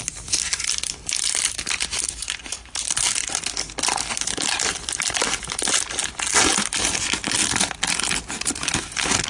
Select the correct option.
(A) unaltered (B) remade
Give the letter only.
A